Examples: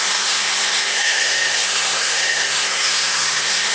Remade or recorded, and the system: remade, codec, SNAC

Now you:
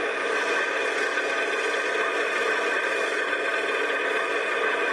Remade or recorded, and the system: recorded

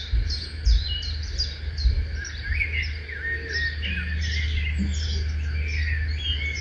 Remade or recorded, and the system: recorded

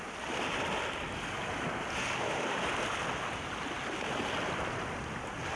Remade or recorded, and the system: recorded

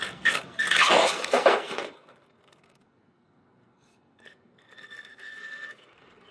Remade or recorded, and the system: remade, codec, SNAC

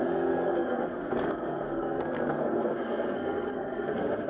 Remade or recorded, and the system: remade, codec, SNAC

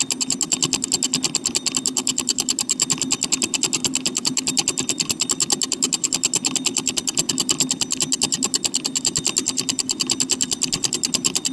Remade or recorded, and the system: recorded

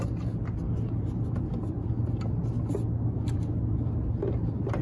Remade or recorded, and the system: recorded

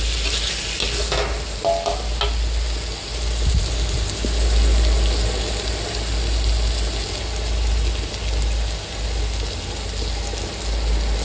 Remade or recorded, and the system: recorded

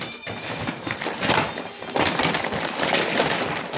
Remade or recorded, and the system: recorded